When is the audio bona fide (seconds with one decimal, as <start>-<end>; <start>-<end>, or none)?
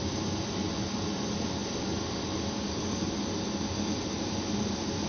0.7-5.1